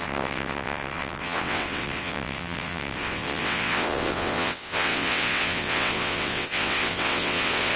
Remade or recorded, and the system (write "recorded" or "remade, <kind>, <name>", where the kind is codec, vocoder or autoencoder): remade, vocoder, WaveNeXt